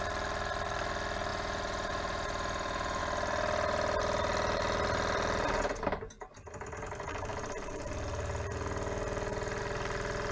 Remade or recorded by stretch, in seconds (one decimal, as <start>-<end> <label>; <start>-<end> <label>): 0.0-1.3 recorded; 1.3-3.0 remade; 3.0-10.3 recorded